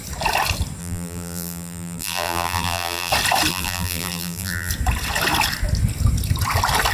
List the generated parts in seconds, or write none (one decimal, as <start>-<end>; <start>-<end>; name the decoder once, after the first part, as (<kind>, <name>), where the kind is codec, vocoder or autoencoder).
0.8-3.1 (vocoder, BigVGAN v2); 3.5-4.7